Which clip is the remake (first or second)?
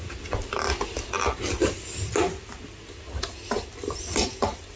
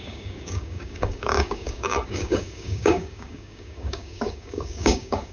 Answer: second